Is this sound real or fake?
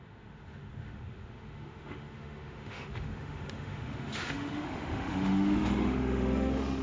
fake